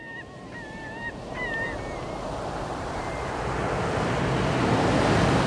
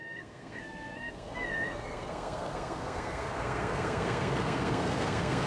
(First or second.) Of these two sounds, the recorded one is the first